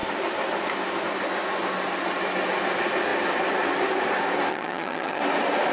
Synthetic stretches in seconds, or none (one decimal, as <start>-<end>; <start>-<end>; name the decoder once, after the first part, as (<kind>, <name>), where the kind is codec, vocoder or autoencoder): 4.5-5.2 (vocoder, HiFi-GAN)